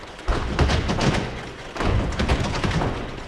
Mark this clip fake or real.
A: fake